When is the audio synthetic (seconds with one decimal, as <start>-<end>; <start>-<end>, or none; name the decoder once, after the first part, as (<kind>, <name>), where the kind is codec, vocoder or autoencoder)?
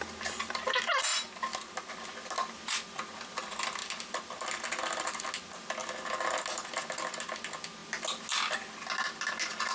none